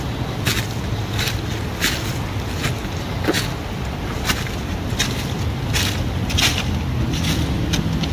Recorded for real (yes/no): yes